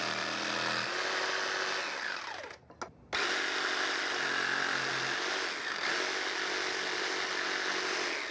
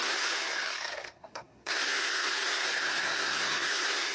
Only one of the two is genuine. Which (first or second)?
first